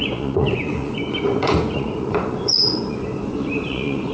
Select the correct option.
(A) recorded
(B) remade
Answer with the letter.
B